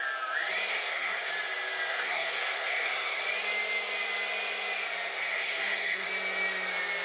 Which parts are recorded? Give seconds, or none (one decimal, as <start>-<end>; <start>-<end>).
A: 0.0-0.7; 1.3-1.9; 3.2-5.1; 6.1-7.0